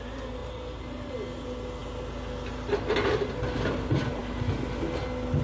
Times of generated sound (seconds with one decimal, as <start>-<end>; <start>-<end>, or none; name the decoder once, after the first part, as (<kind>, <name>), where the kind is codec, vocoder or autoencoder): 0.4-1.1 (vocoder, BigVGAN v2)